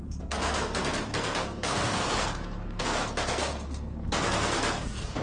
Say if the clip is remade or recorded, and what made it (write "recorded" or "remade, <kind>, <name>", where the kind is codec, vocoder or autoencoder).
remade, codec, SNAC